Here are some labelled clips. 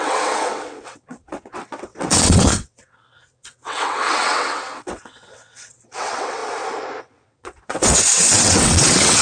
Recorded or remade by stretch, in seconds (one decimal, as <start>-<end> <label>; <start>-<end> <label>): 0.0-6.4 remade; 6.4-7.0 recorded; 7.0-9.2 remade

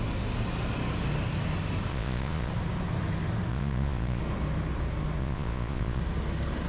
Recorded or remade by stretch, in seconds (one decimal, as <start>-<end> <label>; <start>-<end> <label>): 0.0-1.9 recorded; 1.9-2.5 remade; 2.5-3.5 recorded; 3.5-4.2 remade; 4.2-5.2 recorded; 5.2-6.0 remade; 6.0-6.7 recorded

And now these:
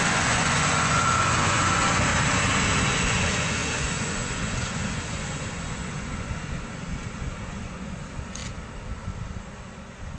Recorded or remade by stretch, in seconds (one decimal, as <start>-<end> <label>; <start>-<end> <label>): 0.0-2.1 remade; 2.1-2.8 recorded; 2.8-8.4 remade; 8.4-9.5 recorded; 9.5-10.2 remade

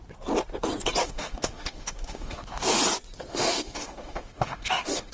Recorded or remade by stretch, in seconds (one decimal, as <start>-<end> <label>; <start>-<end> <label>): 0.0-1.0 recorded; 1.0-2.8 remade; 2.8-3.3 recorded; 3.3-5.1 remade

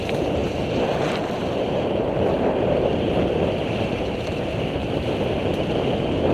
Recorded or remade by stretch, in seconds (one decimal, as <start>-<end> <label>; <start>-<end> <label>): 0.0-6.3 recorded

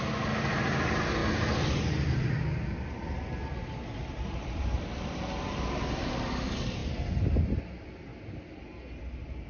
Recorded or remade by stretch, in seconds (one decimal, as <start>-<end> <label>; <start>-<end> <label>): 0.0-9.5 recorded

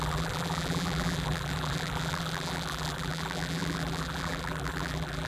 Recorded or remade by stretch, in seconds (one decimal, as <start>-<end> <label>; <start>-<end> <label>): 0.0-5.3 remade

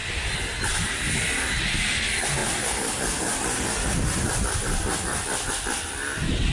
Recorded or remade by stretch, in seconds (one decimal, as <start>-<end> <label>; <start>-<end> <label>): 0.0-6.5 recorded